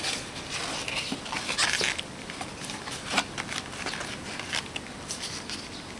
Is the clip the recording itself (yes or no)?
yes